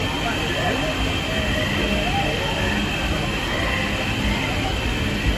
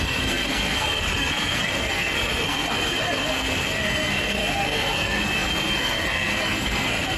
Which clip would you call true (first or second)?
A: first